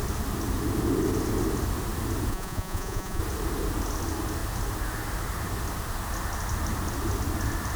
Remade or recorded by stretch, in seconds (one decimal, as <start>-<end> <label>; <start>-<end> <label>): 0.0-2.3 recorded; 2.3-3.2 remade; 3.2-7.8 recorded